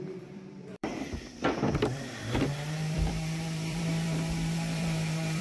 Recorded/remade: remade